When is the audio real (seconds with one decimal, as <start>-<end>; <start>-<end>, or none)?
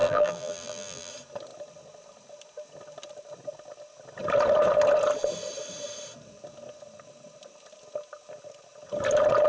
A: 1.1-9.5